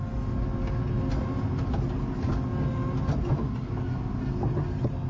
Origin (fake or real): real